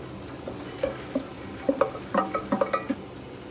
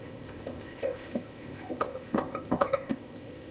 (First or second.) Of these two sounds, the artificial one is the second